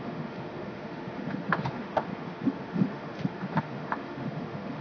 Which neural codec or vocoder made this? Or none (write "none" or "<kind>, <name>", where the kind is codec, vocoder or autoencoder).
autoencoder, DAC-VAE